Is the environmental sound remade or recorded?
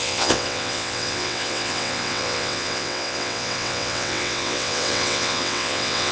remade